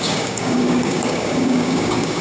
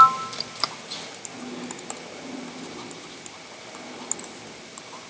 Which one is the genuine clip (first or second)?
second